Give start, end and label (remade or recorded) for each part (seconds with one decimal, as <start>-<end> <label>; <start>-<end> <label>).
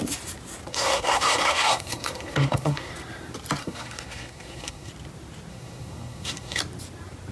0.0-0.7 recorded; 0.7-2.9 remade; 2.9-3.6 recorded; 3.6-4.9 remade; 4.9-5.5 recorded; 5.5-6.6 remade; 6.6-7.3 recorded